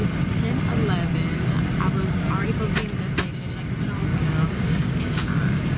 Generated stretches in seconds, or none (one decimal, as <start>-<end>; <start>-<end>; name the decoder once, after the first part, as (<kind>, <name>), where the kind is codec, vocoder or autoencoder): 4.1-5.8 (codec, DAC)